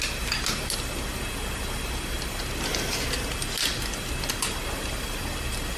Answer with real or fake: real